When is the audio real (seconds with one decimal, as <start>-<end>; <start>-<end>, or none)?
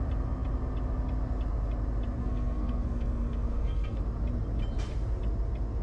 0.0-2.2; 4.0-5.8